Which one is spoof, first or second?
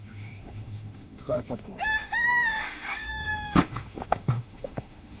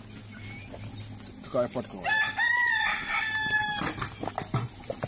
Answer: first